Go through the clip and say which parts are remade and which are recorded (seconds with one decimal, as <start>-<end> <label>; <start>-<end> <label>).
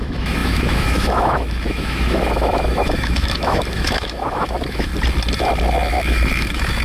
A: 0.0-4.9 remade; 4.9-5.9 recorded; 5.9-6.8 remade